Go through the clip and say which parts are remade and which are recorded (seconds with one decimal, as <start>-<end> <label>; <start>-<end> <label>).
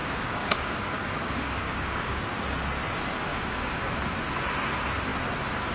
0.0-2.2 remade; 2.2-3.3 recorded; 3.3-3.9 remade; 3.9-5.7 recorded